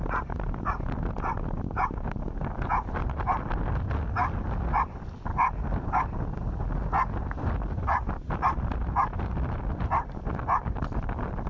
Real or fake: real